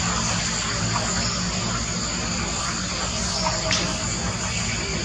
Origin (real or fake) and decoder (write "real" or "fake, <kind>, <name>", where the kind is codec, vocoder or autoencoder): real